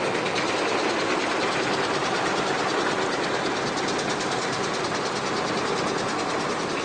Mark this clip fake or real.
real